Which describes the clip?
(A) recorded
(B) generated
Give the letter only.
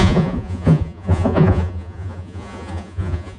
B